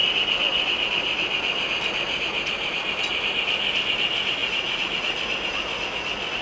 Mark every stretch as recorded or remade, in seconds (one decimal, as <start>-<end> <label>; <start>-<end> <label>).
0.0-4.4 recorded; 4.4-5.2 remade; 5.2-6.4 recorded